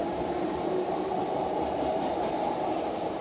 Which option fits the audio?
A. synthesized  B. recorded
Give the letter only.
A